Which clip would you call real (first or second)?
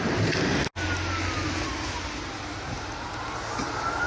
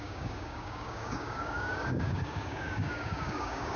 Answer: first